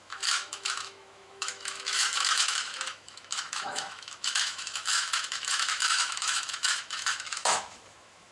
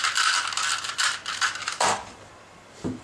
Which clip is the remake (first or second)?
first